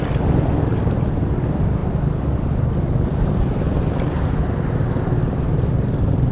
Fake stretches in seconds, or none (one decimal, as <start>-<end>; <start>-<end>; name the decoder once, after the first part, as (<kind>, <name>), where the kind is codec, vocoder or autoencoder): none